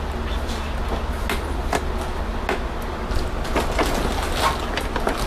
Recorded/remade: recorded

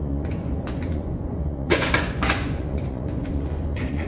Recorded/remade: remade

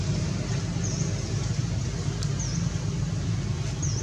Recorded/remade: recorded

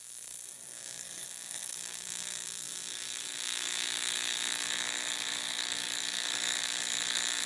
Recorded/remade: remade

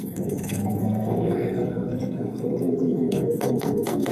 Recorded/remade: remade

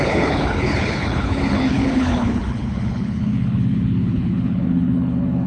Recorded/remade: remade